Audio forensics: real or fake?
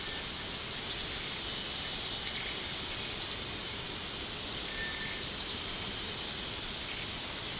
real